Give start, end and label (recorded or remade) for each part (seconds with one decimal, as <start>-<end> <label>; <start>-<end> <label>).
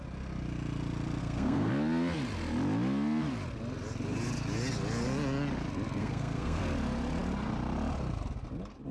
0.0-1.2 recorded; 1.2-1.7 remade; 1.7-6.0 recorded; 6.0-6.6 remade; 6.6-8.9 recorded